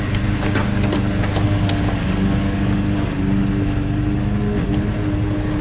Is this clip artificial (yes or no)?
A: no